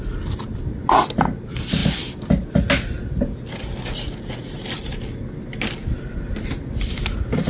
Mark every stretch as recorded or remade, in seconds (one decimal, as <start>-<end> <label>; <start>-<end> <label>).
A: 0.0-7.5 recorded